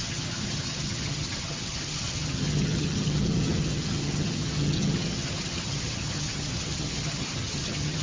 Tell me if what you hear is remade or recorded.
remade